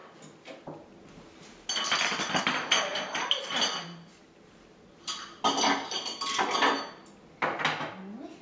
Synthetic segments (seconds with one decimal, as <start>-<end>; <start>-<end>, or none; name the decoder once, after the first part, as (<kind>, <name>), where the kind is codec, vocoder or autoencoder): none